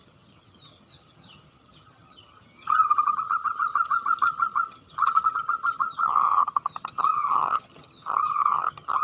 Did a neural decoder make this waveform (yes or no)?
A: yes